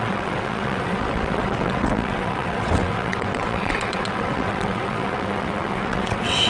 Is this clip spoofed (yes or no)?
yes